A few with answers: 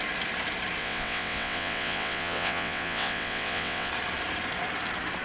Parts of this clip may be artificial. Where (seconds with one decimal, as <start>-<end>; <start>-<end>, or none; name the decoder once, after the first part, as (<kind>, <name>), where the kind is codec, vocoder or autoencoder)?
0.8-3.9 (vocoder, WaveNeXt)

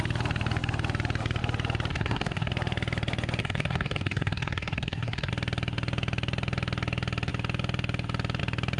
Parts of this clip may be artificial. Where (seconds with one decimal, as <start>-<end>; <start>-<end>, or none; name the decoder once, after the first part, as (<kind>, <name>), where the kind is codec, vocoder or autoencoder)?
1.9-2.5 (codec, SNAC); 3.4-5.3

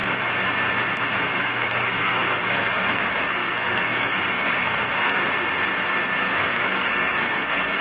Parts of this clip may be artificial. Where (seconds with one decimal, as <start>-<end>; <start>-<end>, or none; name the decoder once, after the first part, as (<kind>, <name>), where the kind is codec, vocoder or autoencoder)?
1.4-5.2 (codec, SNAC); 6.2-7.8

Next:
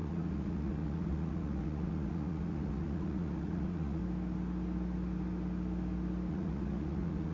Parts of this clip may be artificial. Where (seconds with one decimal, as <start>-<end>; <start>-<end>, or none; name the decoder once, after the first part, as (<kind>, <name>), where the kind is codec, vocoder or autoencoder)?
0.0-4.0 (vocoder, Vocos); 6.3-7.3